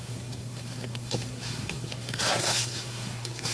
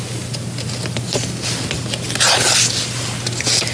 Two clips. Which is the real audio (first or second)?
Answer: second